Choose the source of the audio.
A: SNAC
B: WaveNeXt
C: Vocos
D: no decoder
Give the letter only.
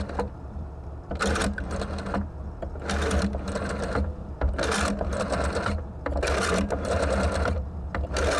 D